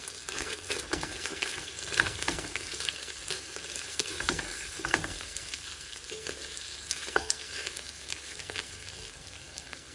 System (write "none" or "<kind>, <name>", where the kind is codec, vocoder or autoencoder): codec, SNAC